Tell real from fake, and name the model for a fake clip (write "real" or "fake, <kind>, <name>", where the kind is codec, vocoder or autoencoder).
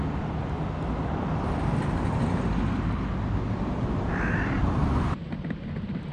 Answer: real